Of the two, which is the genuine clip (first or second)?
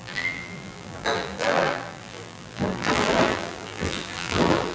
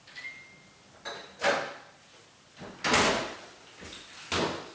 second